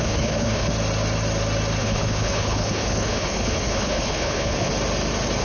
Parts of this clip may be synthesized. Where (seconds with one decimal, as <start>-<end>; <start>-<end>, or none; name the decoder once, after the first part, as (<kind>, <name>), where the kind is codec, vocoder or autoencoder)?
0.0-0.7 (codec, HILCodec); 1.8-4.7